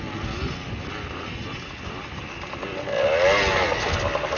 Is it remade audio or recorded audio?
recorded